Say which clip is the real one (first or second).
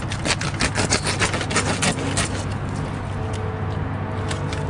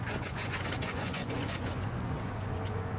first